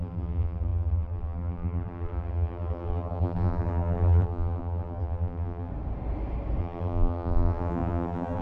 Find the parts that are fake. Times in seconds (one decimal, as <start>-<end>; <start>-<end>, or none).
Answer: 0.0-5.7; 6.6-8.4